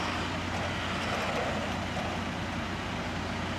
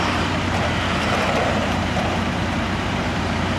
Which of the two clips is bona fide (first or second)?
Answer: first